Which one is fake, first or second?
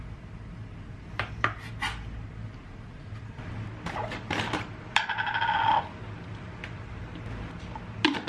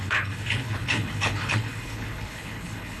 second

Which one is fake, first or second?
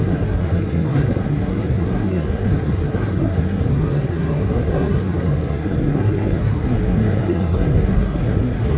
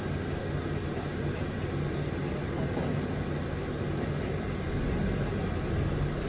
first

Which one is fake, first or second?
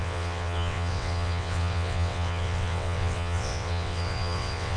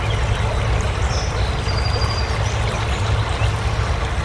first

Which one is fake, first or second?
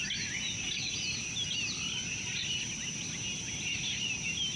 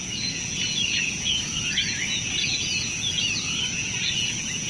second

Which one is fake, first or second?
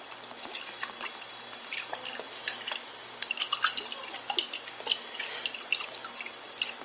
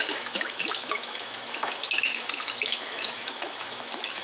second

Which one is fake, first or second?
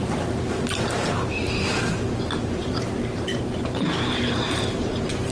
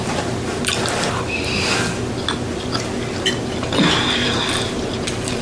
first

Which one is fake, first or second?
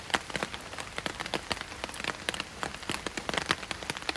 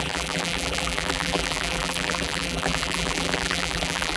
second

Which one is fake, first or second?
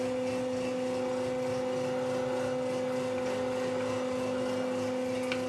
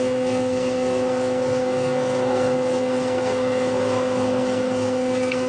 second